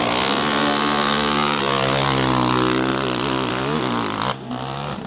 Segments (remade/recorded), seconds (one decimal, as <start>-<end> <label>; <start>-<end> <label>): 0.0-1.0 recorded; 1.0-1.6 remade; 1.6-5.1 recorded